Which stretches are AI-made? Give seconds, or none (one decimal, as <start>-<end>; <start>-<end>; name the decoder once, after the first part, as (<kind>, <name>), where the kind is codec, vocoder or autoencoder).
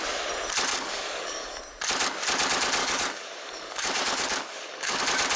0.7-1.6 (codec, DAC); 2.8-5.0